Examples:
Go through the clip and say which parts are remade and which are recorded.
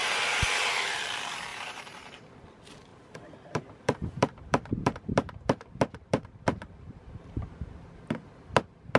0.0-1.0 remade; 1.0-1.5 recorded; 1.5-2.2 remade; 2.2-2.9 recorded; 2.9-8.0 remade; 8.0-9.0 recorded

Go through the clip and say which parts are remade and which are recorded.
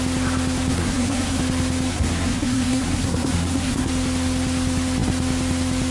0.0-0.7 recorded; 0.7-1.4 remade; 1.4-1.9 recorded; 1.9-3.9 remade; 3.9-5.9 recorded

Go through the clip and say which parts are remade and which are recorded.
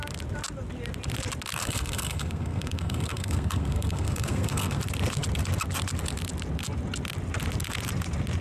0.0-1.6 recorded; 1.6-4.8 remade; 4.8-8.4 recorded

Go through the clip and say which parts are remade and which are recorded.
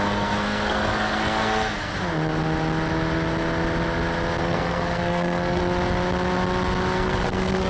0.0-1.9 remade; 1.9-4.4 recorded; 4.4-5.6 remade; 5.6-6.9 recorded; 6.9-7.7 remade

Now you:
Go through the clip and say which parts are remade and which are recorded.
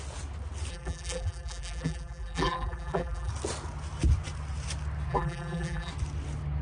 0.0-0.7 recorded; 0.7-3.3 remade; 3.3-5.1 recorded; 5.1-5.9 remade; 5.9-6.6 recorded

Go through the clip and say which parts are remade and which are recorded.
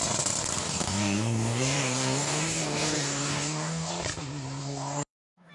0.0-0.6 recorded; 0.6-3.9 remade; 3.9-4.6 recorded; 4.6-5.5 remade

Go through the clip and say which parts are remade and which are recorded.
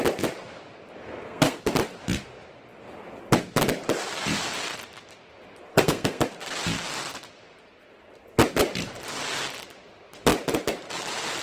0.0-1.0 recorded; 1.0-1.6 remade; 1.6-5.7 recorded; 5.7-6.2 remade; 6.2-11.4 recorded